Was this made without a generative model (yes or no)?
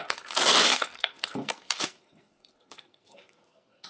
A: no